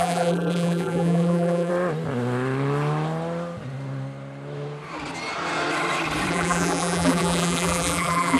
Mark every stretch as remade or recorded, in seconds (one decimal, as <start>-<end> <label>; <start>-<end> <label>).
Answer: 0.0-1.7 remade; 1.7-6.3 recorded; 6.3-8.4 remade